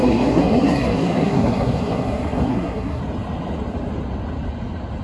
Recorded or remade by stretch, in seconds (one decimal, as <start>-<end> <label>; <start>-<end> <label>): 0.0-3.0 remade; 3.0-5.0 recorded